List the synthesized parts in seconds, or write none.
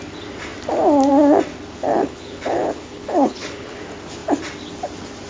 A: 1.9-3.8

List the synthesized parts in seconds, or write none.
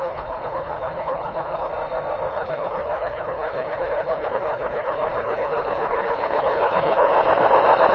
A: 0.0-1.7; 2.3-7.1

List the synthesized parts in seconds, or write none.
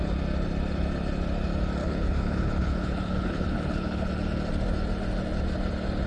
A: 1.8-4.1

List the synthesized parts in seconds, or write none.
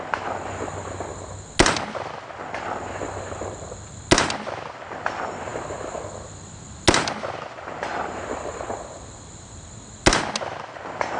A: none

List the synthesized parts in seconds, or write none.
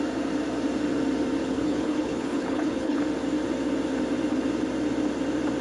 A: 1.4-3.0